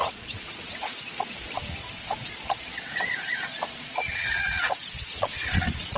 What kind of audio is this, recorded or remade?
remade